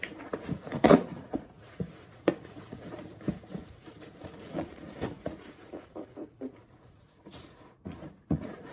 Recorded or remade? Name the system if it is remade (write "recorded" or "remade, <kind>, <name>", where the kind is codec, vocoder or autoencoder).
remade, vocoder, Vocos